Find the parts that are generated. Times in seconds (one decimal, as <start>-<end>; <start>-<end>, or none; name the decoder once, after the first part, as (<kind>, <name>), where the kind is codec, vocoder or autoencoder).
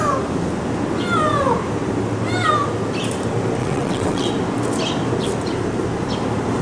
3.6-4.3 (vocoder, WaveNeXt)